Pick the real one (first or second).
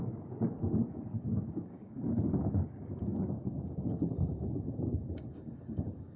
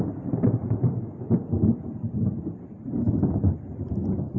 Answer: second